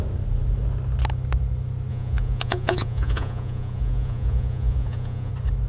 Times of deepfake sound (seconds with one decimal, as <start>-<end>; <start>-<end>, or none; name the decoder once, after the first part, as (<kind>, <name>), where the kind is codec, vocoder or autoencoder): 1.9-5.3 (vocoder, Vocos)